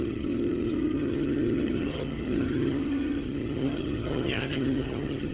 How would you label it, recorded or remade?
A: remade